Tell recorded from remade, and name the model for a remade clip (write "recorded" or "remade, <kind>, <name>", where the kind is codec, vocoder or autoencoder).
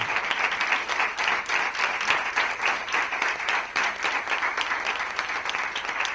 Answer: recorded